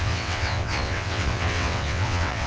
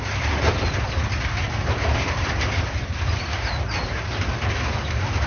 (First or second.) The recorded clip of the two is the second